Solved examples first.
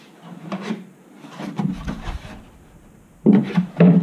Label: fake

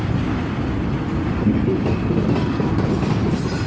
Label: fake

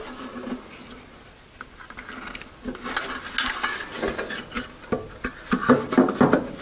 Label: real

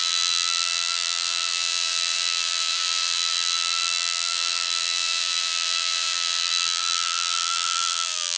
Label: fake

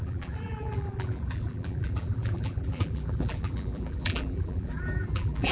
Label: fake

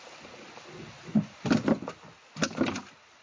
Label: real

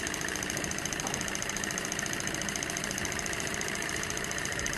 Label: fake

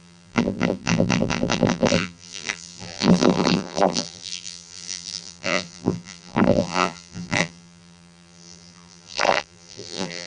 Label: fake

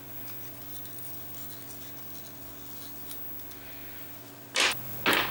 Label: real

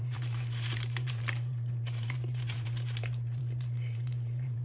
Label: fake